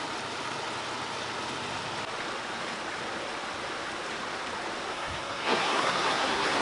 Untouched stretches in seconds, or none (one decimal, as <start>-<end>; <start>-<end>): 0.0-4.9